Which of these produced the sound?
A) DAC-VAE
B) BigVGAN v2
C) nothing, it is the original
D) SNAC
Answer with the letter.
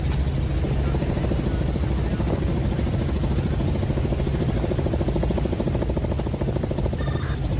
C